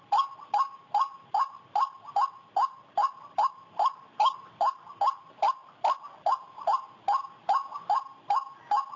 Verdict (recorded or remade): recorded